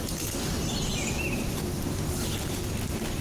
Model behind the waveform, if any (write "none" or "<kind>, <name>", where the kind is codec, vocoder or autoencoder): none